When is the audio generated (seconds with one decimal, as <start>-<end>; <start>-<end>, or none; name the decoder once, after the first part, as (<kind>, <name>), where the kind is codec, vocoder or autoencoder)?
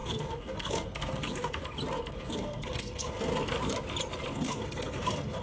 0.0-1.6 (codec, SNAC); 2.1-3.3; 4.3-5.4